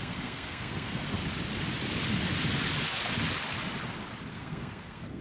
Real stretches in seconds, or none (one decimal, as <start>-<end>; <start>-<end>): 1.2-4.3